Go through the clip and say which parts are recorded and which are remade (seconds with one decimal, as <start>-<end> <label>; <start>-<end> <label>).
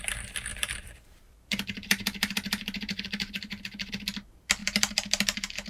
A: 0.0-0.5 recorded; 0.5-3.9 remade; 3.9-4.6 recorded; 4.6-5.7 remade